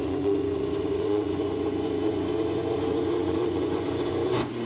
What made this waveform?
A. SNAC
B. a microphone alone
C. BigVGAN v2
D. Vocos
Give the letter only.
D